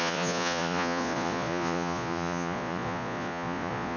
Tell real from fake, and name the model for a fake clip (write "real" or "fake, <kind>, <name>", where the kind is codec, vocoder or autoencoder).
fake, vocoder, Vocos